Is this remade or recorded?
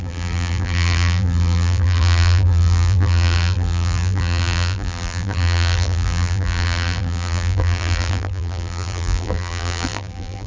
remade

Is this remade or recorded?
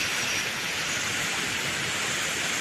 recorded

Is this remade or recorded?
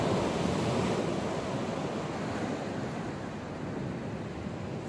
recorded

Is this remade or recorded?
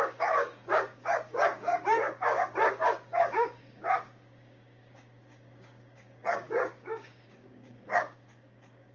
remade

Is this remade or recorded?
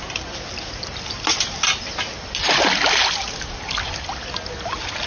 recorded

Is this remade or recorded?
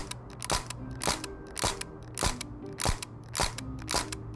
recorded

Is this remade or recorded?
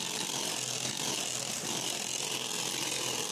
recorded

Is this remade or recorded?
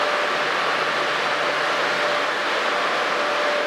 recorded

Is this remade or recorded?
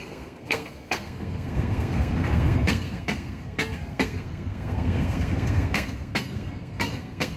remade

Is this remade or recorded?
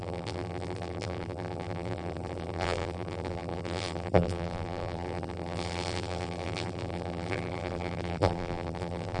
remade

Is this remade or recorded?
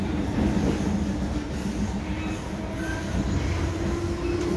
recorded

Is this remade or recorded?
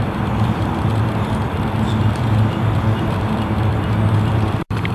remade